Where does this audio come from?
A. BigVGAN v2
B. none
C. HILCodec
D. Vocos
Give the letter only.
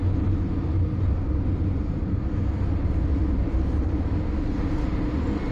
B